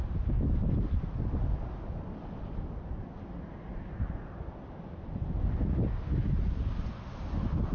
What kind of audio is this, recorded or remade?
recorded